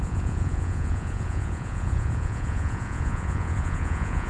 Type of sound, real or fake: fake